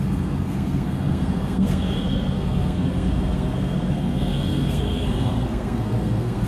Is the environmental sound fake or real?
fake